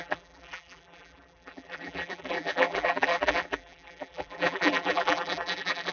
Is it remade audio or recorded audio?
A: remade